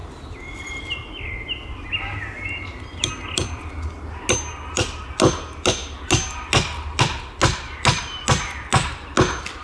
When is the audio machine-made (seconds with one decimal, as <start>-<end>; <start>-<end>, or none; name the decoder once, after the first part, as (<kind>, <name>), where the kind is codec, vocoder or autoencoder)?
none